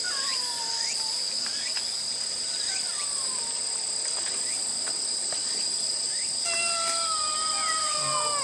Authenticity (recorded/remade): recorded